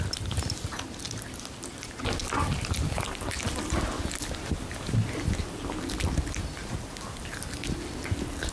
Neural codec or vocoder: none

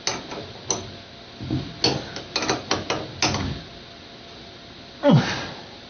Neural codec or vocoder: none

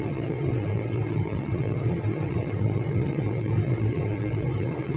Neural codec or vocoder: vocoder, WaveNeXt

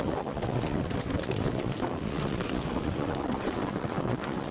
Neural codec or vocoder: vocoder, WaveNeXt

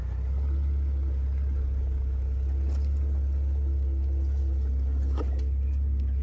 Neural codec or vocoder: none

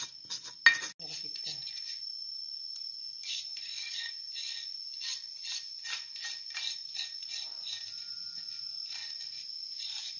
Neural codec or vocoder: none